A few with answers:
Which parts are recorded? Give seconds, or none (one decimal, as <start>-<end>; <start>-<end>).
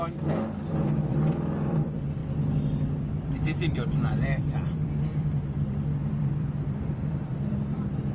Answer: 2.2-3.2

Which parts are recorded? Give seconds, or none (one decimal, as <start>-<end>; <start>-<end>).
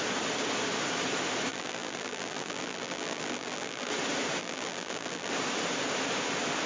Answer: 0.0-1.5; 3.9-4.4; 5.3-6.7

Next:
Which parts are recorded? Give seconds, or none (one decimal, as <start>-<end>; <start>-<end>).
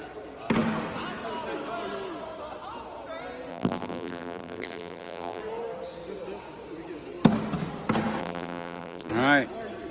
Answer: 0.0-3.5; 5.4-8.2; 9.1-9.9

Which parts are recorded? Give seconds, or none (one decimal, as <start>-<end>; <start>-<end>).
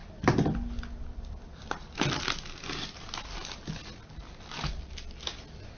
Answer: 0.8-5.8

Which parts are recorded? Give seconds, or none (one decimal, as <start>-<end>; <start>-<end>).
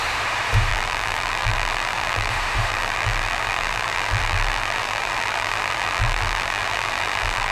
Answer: 0.0-0.7; 2.3-2.7